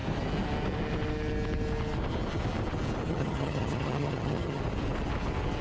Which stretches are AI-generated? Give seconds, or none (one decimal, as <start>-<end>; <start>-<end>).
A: 3.1-4.6